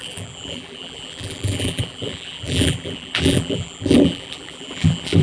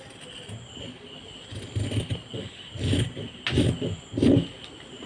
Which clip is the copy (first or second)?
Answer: first